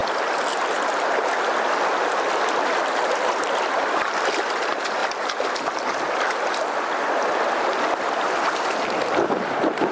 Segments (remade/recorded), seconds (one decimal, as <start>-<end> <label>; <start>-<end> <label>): 0.0-9.9 recorded